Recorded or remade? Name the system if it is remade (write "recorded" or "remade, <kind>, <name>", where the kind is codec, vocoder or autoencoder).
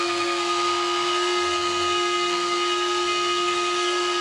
remade, codec, SNAC